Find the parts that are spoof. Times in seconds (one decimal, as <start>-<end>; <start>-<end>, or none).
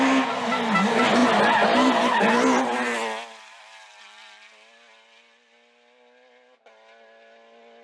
none